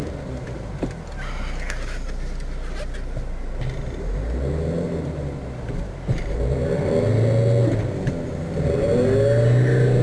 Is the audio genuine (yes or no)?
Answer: yes